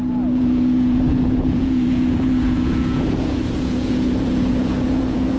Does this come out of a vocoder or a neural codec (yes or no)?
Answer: yes